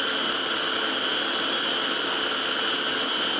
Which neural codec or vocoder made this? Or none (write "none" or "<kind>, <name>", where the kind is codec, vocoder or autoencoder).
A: none